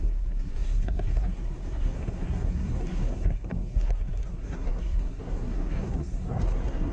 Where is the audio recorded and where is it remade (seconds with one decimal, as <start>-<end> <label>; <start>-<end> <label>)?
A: 0.0-6.9 remade